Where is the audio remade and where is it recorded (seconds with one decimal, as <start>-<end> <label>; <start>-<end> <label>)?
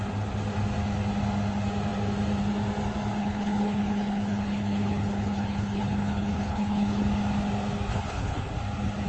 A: 0.0-3.2 recorded; 3.2-7.0 remade; 7.0-7.9 recorded; 7.9-8.5 remade; 8.5-9.1 recorded